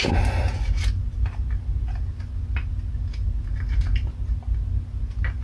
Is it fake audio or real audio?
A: real